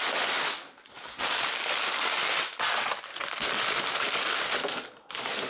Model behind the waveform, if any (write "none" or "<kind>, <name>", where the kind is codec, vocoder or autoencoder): none